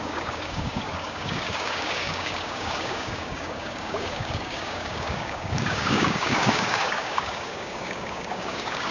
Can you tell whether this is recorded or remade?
remade